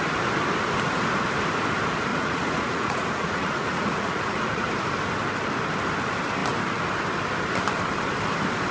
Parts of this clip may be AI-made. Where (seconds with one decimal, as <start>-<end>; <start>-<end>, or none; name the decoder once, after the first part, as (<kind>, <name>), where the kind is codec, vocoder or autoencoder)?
2.1-4.7 (vocoder, Vocos)